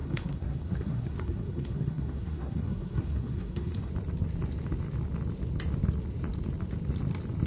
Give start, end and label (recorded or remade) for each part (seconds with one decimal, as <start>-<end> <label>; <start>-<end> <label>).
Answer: 0.0-3.9 remade; 3.9-7.5 recorded